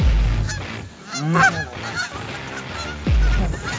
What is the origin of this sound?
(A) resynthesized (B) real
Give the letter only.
B